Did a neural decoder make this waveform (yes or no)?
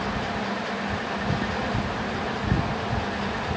no